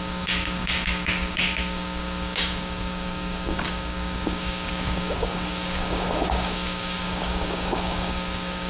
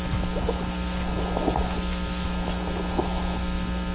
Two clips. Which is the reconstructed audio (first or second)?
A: first